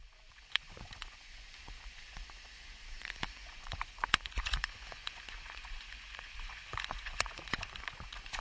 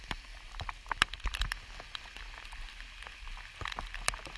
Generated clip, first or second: first